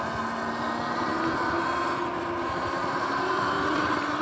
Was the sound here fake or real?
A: real